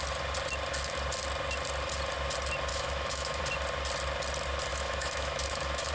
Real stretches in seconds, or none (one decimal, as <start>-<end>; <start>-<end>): 0.0-2.7; 3.4-4.7